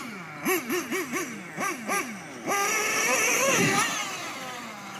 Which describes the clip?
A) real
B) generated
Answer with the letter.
A